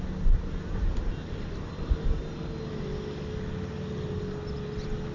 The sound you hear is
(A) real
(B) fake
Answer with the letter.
A